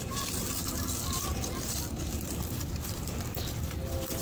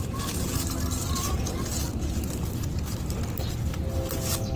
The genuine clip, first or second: second